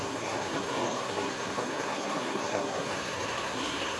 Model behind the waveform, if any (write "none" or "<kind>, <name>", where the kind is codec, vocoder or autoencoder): codec, SNAC